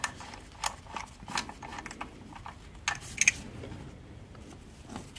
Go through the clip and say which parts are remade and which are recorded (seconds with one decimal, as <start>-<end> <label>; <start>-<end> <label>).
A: 0.0-5.2 recorded